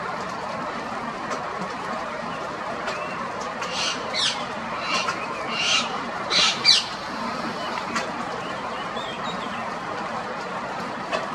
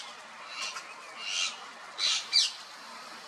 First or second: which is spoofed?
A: first